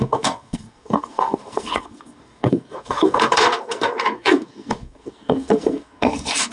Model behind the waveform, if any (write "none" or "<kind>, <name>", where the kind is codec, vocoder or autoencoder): codec, SNAC